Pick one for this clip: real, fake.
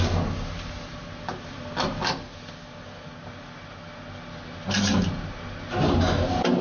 real